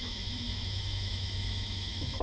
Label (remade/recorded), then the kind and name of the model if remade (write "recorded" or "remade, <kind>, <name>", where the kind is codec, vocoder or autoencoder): remade, autoencoder, DAC-VAE